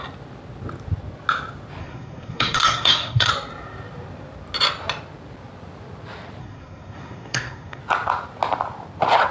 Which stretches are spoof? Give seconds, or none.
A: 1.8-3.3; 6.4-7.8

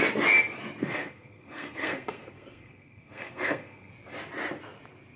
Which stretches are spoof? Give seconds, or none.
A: 0.8-3.9

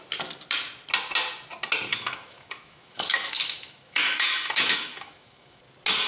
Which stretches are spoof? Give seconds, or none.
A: 1.9-5.6

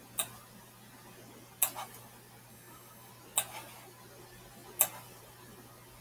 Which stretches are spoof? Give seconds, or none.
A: 2.5-3.1